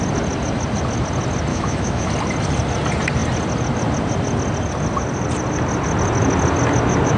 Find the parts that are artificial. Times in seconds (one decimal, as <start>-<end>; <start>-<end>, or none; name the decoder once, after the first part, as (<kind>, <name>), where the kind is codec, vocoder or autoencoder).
1.5-2.1 (autoencoder, DAC-VAE)